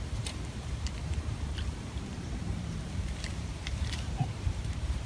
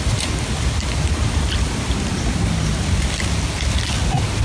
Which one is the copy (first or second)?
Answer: first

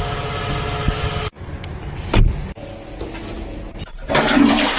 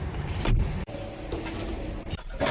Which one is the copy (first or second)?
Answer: second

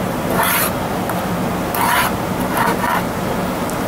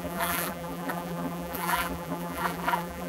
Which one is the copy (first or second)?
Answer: second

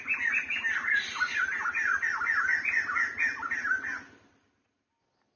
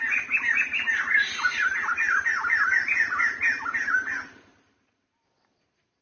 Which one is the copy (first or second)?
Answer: second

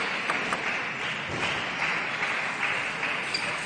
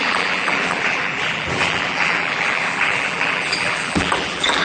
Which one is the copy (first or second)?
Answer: second